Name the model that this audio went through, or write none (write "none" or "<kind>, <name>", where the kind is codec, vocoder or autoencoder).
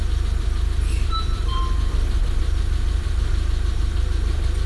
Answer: vocoder, BigVGAN v2